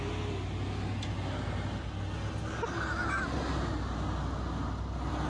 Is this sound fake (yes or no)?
no